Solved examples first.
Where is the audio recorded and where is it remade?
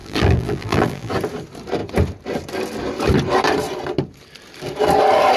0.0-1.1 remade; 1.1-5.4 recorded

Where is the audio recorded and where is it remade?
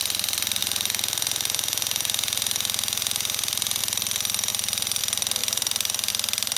0.0-0.6 recorded; 0.6-3.8 remade; 3.8-4.5 recorded; 4.5-5.0 remade; 5.0-5.4 recorded; 5.4-6.1 remade; 6.1-6.6 recorded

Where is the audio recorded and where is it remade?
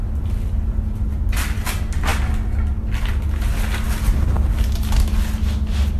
0.0-6.0 recorded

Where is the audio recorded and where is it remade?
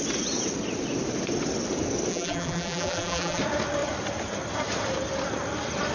0.0-2.1 recorded; 2.1-3.4 remade; 3.4-5.9 recorded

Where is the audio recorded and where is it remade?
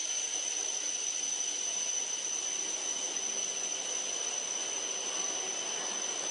0.0-6.3 recorded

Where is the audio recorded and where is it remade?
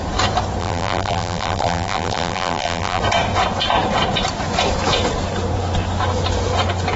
0.0-0.6 recorded; 0.6-3.0 remade; 3.0-7.0 recorded